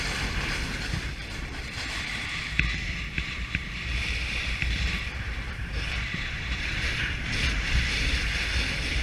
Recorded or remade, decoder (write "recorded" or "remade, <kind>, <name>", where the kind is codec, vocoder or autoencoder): remade, vocoder, BigVGAN v2